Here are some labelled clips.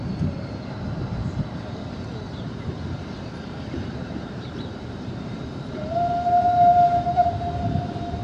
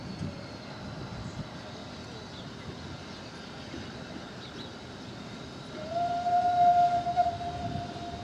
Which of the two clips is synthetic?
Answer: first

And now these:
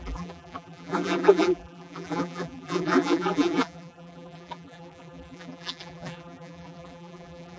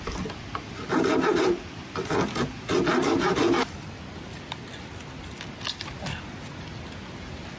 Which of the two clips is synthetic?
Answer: first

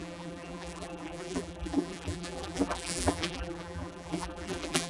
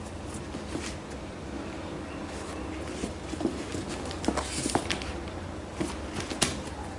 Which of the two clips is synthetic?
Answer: first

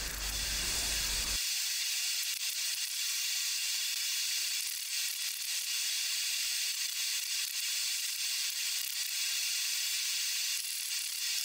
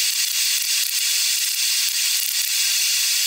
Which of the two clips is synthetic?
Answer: first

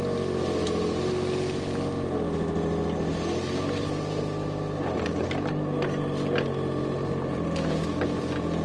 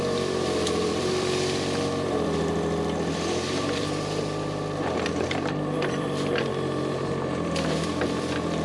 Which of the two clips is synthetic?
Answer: second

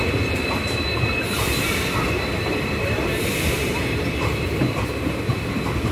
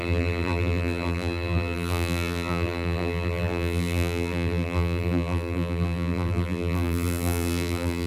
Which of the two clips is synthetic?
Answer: second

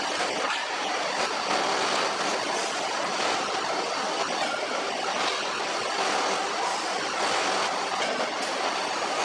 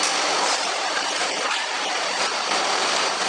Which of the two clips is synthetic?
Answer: second